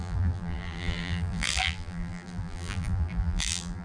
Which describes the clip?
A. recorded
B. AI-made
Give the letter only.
B